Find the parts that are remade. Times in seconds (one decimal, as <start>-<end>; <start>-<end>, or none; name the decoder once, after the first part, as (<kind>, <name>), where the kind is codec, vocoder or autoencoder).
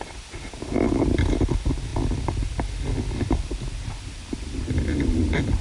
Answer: none